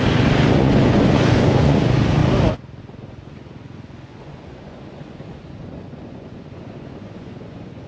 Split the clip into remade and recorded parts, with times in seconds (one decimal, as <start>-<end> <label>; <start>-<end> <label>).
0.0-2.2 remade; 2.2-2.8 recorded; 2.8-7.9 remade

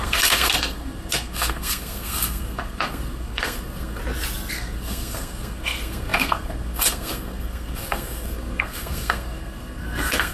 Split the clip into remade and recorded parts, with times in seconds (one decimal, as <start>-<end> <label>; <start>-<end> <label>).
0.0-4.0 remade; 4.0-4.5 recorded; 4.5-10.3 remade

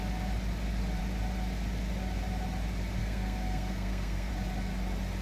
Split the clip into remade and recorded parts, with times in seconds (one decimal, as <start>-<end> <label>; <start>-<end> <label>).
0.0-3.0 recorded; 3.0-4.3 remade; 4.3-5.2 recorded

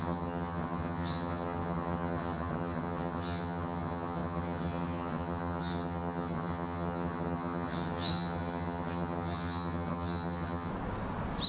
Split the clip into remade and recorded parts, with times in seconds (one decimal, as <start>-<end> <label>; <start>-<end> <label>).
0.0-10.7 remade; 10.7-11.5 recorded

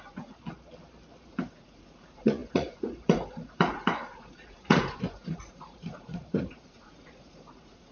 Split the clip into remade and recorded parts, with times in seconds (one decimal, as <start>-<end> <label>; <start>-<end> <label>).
0.0-0.4 remade; 0.4-1.3 recorded; 1.3-7.9 remade